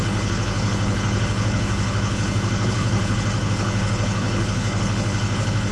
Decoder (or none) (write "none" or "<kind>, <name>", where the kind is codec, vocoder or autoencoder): codec, HILCodec